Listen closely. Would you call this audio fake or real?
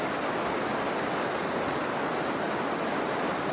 real